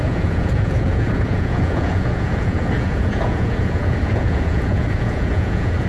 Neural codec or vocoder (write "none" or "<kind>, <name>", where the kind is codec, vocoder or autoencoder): vocoder, Vocos